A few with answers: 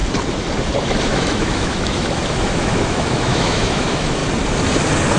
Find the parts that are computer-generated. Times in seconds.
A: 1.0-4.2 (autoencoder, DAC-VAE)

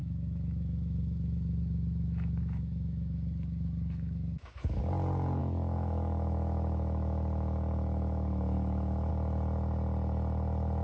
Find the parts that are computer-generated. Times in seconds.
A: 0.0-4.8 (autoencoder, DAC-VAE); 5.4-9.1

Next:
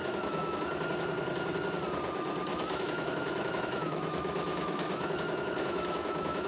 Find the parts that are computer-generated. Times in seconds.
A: 0.0-0.6 (autoencoder, DAC-VAE); 2.5-6.5

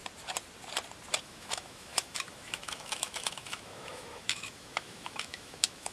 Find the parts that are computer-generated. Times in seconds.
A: 1.2-5.9 (autoencoder, DAC-VAE)